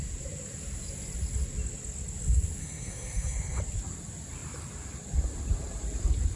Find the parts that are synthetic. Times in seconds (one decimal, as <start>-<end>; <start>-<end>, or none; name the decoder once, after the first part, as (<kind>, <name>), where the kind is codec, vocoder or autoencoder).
2.6-3.6 (codec, SNAC)